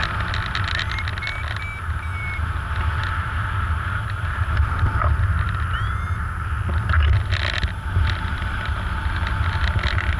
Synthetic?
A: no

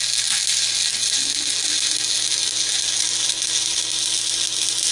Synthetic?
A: no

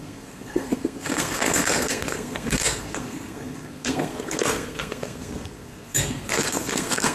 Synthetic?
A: yes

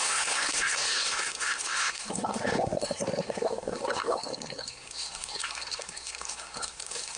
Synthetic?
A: yes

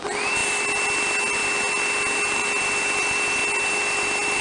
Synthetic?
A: no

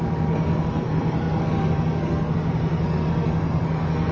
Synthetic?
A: yes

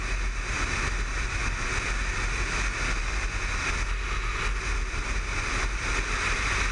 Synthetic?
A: no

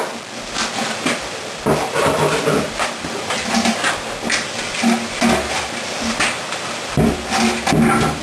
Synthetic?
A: no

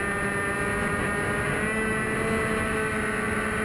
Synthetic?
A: no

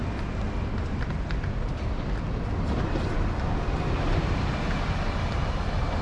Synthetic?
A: no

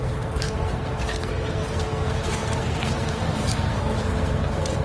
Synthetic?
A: yes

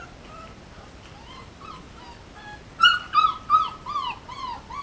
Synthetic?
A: no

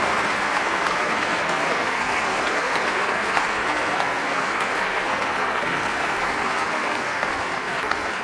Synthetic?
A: yes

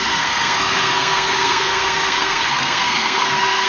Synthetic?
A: yes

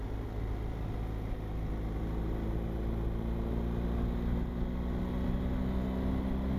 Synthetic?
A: no